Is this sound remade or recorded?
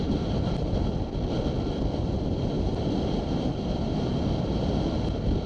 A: recorded